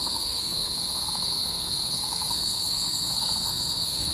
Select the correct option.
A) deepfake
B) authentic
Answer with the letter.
A